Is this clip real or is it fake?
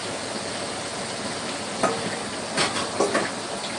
real